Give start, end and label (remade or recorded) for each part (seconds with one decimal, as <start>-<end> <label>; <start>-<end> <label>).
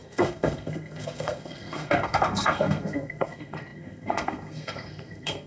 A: 0.0-5.5 remade